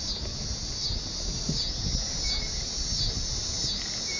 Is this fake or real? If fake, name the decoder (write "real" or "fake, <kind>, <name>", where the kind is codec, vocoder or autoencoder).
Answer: real